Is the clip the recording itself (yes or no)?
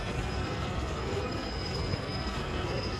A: no